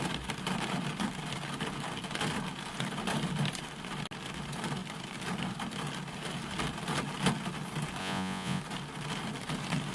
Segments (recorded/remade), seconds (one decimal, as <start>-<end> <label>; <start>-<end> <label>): 0.0-8.0 recorded; 8.0-8.6 remade; 8.6-9.9 recorded